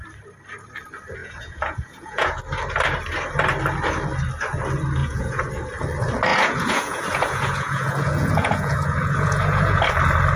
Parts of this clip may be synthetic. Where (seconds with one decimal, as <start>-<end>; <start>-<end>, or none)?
1.2-2.4; 5.0-5.5; 6.3-9.8